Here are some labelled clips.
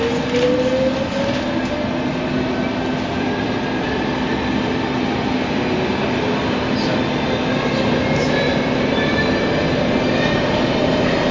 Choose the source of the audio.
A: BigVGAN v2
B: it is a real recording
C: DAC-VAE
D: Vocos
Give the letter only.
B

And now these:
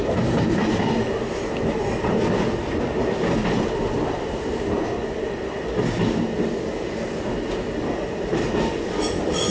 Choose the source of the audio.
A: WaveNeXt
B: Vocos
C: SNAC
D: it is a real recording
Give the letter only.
D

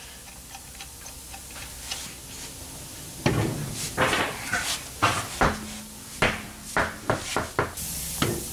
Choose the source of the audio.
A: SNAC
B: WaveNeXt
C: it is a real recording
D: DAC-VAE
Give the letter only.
C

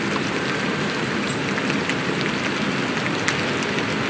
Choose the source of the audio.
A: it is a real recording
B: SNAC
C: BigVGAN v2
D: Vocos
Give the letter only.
A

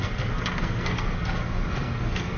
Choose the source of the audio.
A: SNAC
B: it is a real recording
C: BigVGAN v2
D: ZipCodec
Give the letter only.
A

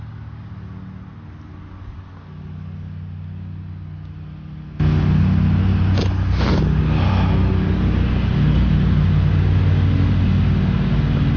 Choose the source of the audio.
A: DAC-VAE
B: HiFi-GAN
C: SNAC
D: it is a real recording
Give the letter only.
D